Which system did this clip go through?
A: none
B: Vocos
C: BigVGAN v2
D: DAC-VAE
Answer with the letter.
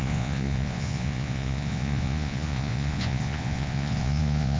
B